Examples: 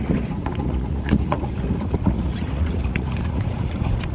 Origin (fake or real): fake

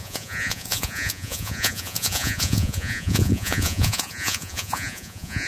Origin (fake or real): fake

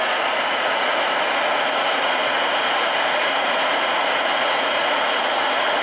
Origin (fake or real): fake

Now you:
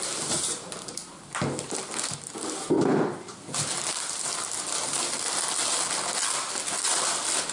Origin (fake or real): real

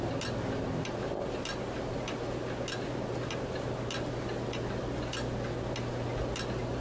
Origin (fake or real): real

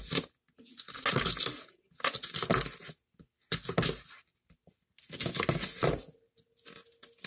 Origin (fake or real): real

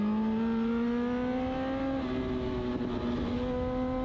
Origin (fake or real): real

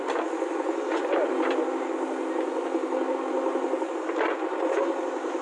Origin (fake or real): real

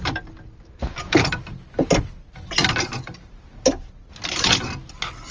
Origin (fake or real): real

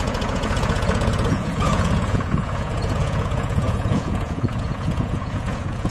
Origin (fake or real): fake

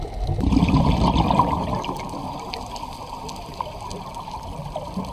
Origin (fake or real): real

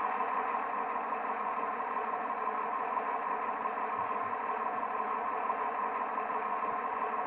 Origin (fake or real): fake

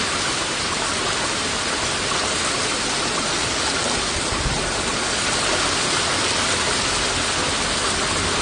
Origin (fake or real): real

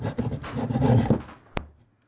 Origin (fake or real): real